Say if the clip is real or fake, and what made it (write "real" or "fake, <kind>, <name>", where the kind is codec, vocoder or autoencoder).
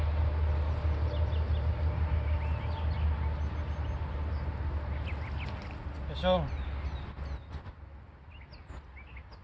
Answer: real